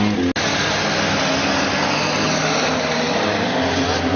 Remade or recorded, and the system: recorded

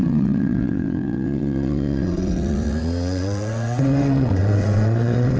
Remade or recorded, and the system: remade, vocoder, WaveNeXt